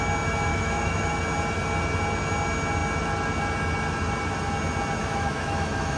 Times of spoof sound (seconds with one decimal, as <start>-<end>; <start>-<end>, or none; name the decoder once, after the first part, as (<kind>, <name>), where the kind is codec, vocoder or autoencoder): 0.5-1.1 (autoencoder, DAC-VAE); 5.0-6.0